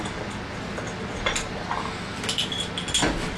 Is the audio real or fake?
real